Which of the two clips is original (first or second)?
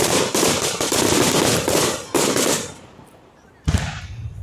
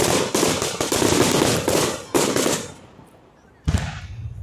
second